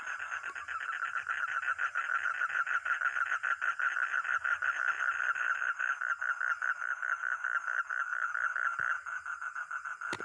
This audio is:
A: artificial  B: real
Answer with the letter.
B